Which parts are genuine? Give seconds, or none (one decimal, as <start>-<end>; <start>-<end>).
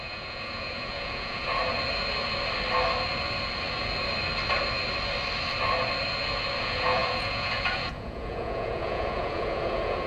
1.6-6.6